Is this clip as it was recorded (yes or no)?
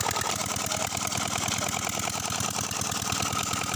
yes